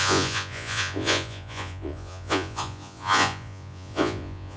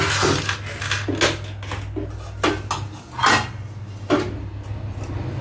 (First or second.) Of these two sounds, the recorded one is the second